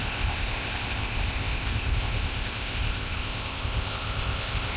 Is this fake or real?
fake